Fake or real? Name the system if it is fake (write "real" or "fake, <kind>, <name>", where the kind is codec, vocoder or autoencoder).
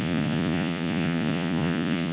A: fake, vocoder, Vocos